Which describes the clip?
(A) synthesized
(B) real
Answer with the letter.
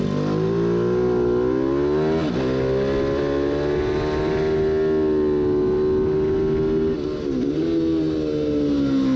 B